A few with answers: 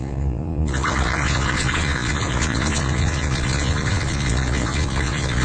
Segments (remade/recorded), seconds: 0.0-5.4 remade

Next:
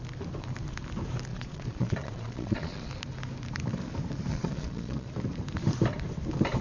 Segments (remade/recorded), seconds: 0.0-1.3 recorded; 1.3-2.9 remade; 2.9-4.3 recorded; 4.3-5.1 remade; 5.1-6.6 recorded

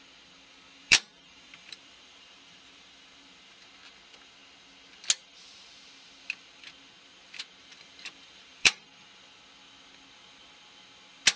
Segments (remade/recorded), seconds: 0.0-0.8 recorded; 0.8-3.7 remade; 3.7-7.6 recorded; 7.6-8.8 remade; 8.8-11.4 recorded

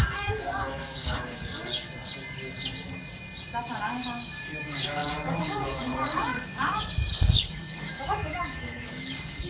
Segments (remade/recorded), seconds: 0.0-1.6 remade; 1.6-3.8 recorded; 3.8-9.5 remade